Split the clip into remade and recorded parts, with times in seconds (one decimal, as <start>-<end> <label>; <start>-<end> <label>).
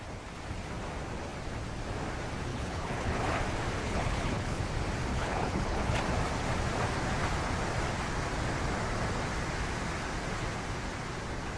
0.0-2.5 recorded; 2.5-3.4 remade; 3.4-3.8 recorded; 3.8-4.6 remade; 4.6-5.1 recorded; 5.1-6.0 remade; 6.0-11.6 recorded